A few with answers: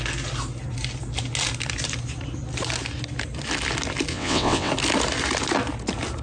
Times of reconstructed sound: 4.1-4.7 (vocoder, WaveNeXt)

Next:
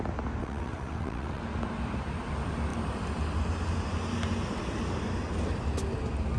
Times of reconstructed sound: 0.4-1.4 (vocoder, WaveNeXt)

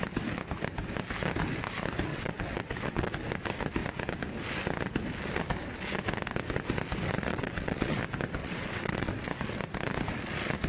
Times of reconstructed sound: 2.1-3.1 (vocoder, WaveNeXt); 7.3-8.0; 8.4-9.1

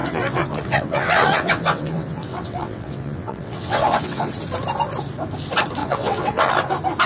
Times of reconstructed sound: 0.0-4.3 (vocoder, WaveNeXt); 5.8-6.5

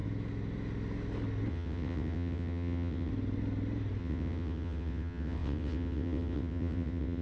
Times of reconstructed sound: 1.5-3.1 (vocoder, WaveNeXt); 4.0-7.2

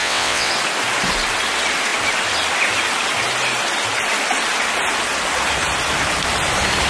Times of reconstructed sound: 0.0-0.5 (vocoder, WaveNeXt)